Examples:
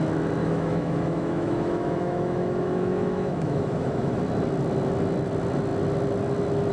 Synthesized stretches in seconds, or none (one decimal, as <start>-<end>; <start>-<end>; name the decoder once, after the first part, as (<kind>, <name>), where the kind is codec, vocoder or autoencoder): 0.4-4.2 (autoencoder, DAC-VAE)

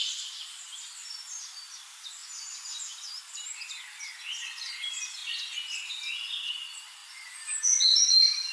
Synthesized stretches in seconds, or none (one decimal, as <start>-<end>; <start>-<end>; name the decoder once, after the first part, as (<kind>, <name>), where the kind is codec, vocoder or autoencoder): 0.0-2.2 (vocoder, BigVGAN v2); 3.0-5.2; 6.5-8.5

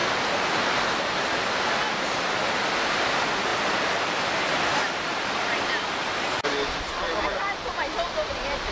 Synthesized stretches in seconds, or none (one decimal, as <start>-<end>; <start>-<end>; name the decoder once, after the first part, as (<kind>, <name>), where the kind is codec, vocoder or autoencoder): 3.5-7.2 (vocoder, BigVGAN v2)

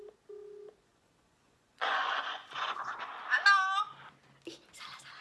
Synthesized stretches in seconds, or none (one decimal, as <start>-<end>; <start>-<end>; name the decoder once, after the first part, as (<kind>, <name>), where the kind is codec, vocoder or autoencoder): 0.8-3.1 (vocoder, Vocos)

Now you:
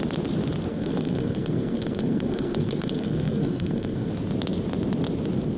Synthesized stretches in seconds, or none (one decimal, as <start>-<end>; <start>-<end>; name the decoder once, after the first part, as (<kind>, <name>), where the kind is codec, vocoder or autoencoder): 0.7-4.1 (codec, SNAC)

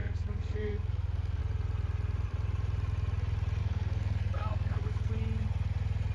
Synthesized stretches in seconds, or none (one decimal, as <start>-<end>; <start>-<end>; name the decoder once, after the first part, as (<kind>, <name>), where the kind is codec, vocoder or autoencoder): 0.0-1.4 (codec, SNAC); 3.6-5.1